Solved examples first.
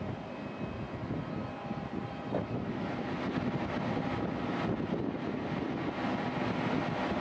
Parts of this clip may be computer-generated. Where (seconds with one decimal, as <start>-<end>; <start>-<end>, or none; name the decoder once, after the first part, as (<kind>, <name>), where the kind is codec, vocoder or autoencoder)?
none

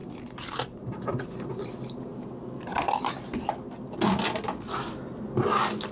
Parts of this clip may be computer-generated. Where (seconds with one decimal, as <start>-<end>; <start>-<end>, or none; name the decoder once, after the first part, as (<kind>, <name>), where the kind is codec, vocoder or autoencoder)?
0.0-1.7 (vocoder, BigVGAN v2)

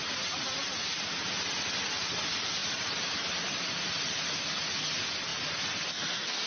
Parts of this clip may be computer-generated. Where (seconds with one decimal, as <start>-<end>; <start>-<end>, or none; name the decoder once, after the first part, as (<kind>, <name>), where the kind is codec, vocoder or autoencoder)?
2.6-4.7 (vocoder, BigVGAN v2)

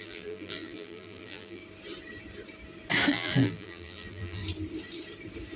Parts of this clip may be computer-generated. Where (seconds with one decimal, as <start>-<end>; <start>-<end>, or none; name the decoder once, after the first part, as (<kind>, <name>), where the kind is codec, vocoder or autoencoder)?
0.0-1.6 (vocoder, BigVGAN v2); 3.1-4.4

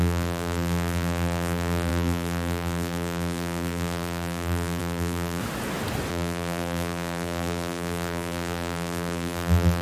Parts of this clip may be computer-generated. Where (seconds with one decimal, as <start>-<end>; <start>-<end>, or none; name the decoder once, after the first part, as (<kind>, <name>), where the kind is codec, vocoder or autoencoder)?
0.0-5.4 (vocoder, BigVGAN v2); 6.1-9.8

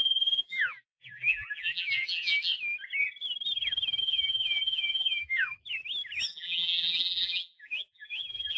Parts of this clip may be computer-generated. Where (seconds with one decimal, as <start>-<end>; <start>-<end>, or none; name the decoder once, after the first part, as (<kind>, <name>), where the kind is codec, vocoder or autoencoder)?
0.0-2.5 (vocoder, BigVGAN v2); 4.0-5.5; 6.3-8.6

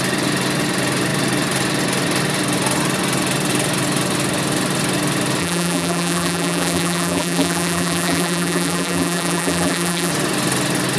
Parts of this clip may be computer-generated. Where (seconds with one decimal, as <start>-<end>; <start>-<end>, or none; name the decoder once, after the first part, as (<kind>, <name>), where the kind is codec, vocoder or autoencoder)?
5.4-10.1 (vocoder, BigVGAN v2)

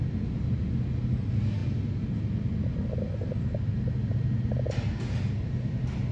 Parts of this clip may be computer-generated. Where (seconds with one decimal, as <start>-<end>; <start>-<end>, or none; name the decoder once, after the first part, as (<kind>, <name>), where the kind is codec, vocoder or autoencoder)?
none